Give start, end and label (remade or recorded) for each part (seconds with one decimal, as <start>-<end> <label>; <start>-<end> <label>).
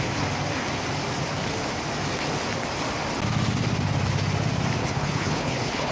0.0-4.8 recorded; 4.8-5.9 remade